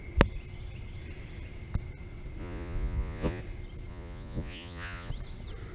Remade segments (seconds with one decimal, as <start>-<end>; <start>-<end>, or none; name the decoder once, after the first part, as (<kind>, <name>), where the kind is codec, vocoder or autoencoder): 2.4-3.4 (vocoder, Vocos); 3.9-5.1